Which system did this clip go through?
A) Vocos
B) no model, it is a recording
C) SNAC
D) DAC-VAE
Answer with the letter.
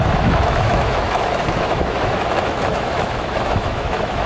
D